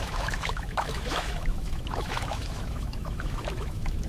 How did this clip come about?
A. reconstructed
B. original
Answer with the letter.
A